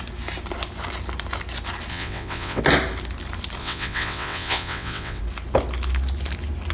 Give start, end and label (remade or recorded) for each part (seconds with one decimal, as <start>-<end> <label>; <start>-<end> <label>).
0.0-1.9 recorded; 1.9-2.6 remade; 2.6-3.6 recorded; 3.6-5.2 remade; 5.2-6.7 recorded